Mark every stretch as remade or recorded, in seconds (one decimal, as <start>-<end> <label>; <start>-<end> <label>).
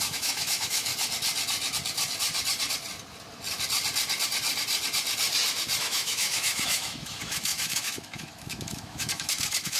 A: 0.0-0.9 remade; 0.9-5.8 recorded; 5.8-9.8 remade